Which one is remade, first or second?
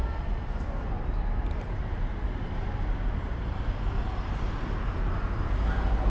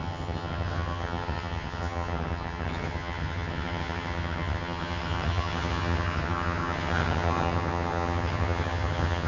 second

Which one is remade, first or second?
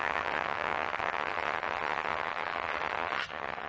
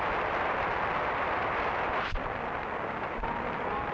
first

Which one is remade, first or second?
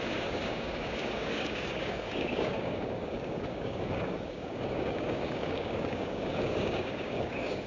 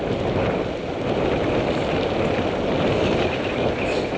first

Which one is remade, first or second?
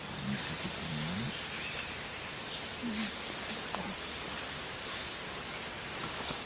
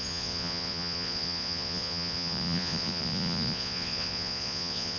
second